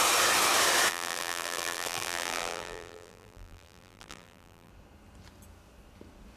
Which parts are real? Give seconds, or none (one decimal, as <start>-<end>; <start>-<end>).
0.0-0.9; 4.7-6.4